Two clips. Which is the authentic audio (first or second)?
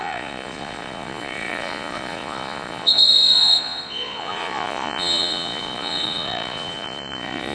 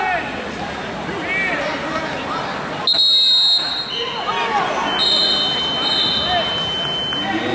second